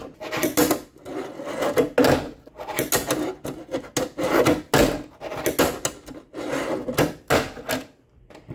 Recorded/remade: recorded